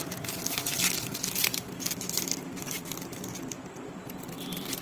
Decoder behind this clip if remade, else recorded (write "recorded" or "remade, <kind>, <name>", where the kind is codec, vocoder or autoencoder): recorded